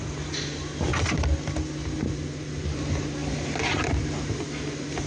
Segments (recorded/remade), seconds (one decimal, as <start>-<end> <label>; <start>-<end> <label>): 0.0-5.1 recorded